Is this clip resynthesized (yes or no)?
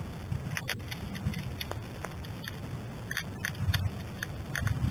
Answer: no